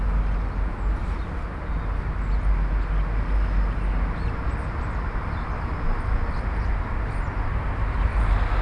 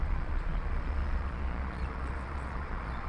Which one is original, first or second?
first